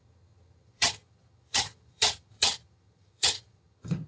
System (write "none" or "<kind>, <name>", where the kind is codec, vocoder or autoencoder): vocoder, HiFi-GAN